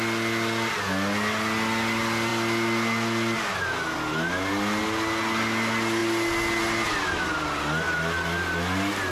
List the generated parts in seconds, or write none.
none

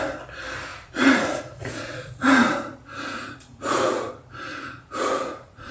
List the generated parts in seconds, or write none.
0.7-4.1 (vocoder, Vocos); 4.5-5.7

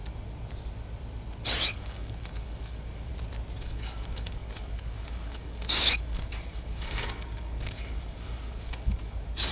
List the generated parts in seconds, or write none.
1.4-3.1 (codec, DAC); 3.6-9.5